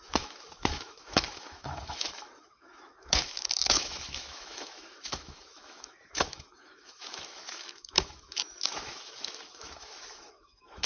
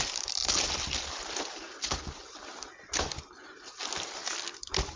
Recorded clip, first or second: second